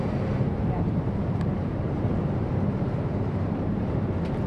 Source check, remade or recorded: remade